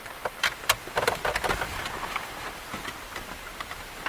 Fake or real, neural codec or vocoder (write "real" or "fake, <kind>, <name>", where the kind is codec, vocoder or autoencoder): fake, vocoder, BigVGAN v2